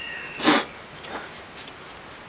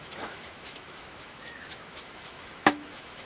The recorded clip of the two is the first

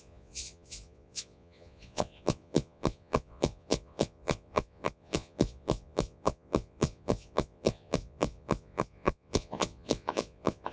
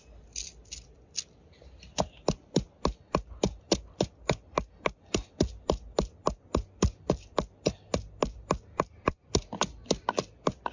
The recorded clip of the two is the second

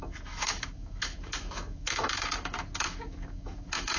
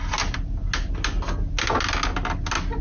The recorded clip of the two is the second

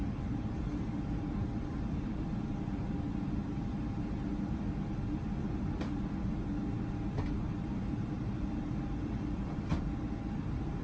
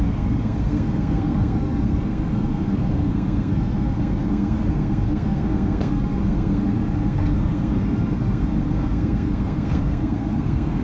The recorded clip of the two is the first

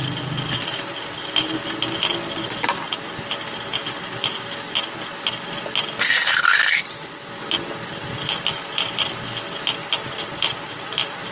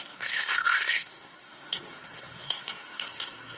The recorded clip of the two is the first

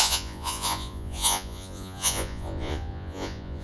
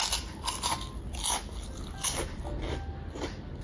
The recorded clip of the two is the second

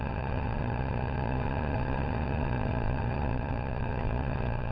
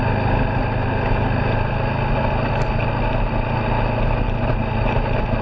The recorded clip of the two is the second